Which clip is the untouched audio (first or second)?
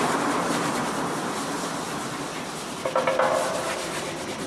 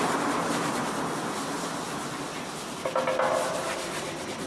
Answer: second